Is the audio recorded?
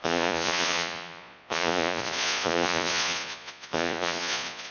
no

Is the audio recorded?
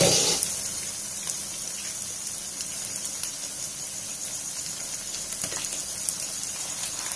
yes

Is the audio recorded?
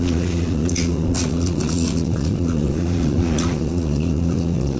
no